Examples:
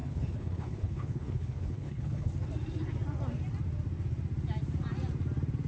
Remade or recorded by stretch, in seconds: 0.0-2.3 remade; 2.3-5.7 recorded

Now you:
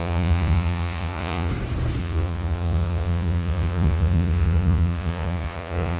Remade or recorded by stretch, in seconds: 0.0-1.5 remade; 1.5-2.0 recorded; 2.0-6.0 remade

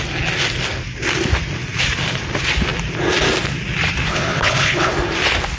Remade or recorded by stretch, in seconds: 0.0-4.1 recorded; 4.1-4.9 remade; 4.9-5.6 recorded

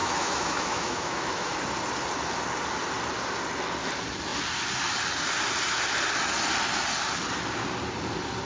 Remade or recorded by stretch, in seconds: 0.0-1.5 remade; 1.5-8.4 recorded

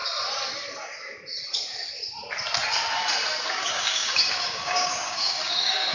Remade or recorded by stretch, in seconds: 0.0-3.5 recorded; 3.5-5.9 remade

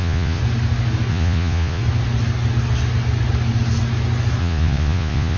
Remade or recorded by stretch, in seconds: 0.0-0.4 remade; 0.4-1.1 recorded; 1.1-1.8 remade; 1.8-4.4 recorded; 4.4-5.4 remade

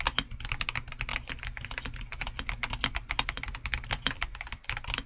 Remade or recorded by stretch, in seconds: 0.0-5.1 recorded

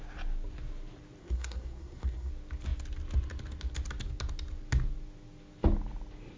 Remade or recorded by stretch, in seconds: 0.0-1.2 recorded; 1.2-2.3 remade; 2.3-6.4 recorded